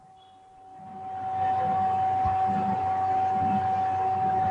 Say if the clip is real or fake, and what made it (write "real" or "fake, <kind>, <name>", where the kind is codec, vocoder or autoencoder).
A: real